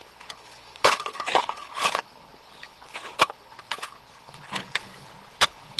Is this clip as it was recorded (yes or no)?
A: no